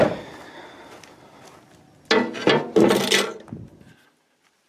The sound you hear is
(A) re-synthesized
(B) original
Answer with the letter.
B